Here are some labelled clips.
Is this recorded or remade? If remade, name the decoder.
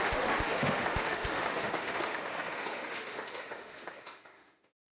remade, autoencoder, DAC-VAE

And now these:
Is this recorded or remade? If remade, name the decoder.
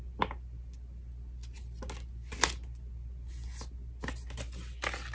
recorded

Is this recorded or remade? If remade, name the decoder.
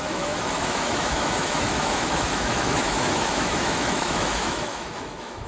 remade, autoencoder, DAC-VAE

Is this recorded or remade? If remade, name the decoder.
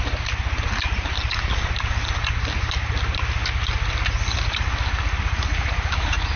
recorded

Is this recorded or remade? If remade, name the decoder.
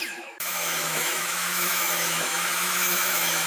remade, autoencoder, DAC-VAE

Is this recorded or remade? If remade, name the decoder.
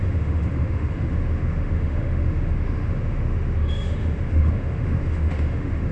remade, autoencoder, DAC-VAE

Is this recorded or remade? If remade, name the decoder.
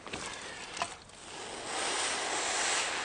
recorded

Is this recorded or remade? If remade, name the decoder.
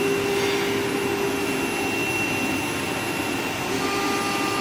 recorded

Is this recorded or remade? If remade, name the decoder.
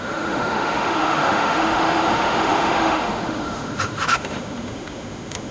remade, autoencoder, DAC-VAE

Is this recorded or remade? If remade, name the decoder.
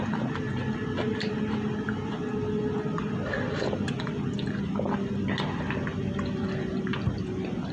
recorded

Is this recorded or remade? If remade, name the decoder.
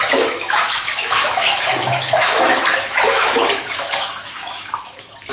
remade, autoencoder, DAC-VAE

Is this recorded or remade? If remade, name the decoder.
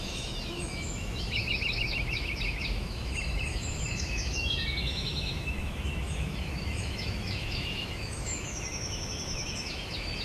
remade, autoencoder, DAC-VAE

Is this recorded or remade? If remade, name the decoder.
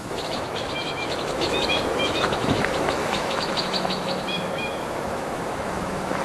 remade, autoencoder, DAC-VAE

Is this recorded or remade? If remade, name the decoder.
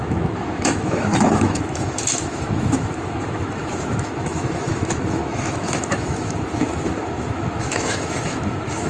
remade, autoencoder, DAC-VAE